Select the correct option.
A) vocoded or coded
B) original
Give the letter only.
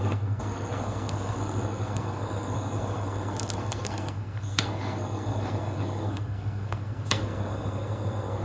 A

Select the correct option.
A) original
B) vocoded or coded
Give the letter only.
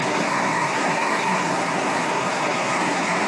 B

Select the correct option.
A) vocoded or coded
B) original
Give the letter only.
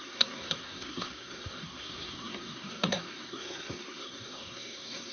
A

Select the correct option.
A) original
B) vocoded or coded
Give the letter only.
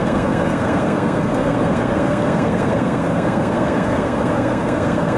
B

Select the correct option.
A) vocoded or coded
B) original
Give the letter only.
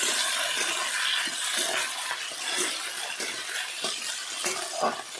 B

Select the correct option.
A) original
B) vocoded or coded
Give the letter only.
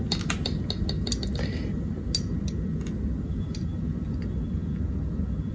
A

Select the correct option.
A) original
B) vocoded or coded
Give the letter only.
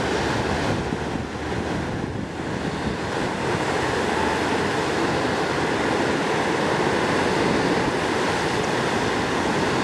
A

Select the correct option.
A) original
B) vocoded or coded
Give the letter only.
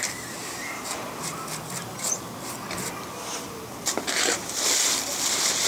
A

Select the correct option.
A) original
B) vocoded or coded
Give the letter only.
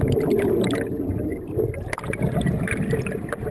A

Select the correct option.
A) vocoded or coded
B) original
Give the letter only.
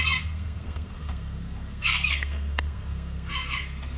A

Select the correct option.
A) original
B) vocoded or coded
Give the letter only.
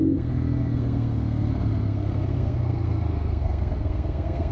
B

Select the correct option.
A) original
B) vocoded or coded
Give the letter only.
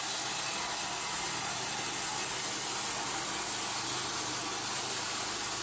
A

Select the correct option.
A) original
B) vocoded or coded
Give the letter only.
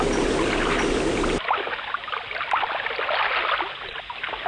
A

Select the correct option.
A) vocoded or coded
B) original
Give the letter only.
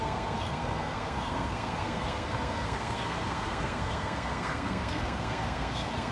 A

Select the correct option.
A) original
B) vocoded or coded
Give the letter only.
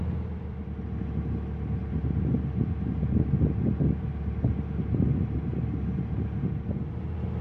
A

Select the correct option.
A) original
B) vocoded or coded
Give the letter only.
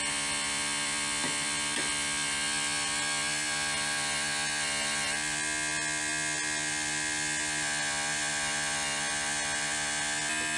A